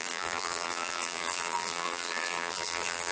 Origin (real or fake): fake